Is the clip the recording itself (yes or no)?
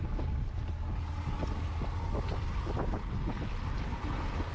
yes